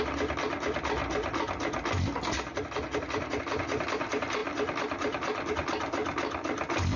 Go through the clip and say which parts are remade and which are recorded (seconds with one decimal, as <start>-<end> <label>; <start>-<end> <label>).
0.0-7.0 recorded